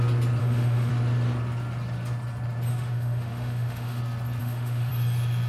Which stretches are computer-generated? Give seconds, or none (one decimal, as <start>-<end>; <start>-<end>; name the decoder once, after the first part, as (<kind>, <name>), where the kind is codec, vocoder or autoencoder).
0.4-0.9 (autoencoder, DAC-VAE); 2.7-4.0; 4.4-4.9